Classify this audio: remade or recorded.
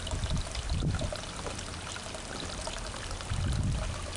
recorded